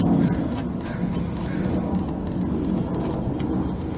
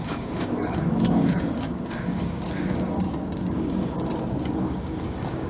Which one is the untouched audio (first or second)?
first